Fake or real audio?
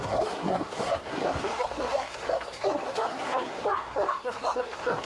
fake